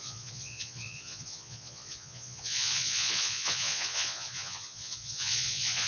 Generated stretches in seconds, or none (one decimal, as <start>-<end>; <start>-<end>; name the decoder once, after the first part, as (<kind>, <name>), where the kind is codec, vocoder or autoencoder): 0.0-5.9 (vocoder, Vocos)